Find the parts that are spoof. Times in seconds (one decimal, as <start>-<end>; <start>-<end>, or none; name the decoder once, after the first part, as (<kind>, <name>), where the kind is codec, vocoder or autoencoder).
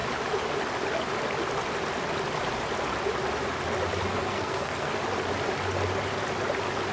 4.1-4.9 (codec, SNAC)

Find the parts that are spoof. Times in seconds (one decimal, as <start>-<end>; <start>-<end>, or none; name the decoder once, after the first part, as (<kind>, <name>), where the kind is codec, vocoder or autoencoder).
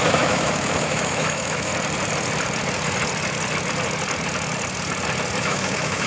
0.0-1.7 (autoencoder, DAC-VAE); 5.4-6.1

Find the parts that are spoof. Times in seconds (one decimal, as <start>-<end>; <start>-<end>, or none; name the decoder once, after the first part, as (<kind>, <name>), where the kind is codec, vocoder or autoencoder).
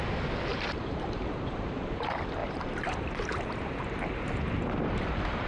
0.5-2.0 (vocoder, BigVGAN v2); 2.4-5.5